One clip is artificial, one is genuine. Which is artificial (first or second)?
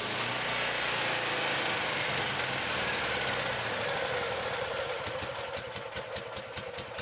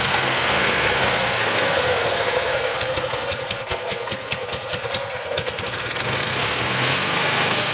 second